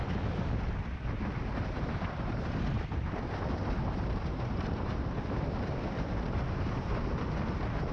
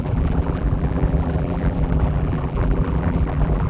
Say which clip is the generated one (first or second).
second